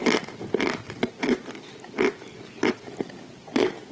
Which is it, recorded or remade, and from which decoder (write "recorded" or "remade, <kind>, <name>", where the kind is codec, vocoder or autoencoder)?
recorded